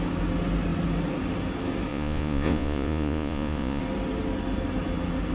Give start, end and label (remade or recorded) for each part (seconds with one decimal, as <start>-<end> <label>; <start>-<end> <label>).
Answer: 0.0-1.9 recorded; 1.9-3.8 remade; 3.8-5.3 recorded